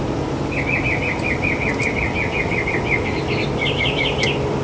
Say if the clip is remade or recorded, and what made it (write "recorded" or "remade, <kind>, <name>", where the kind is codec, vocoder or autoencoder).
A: recorded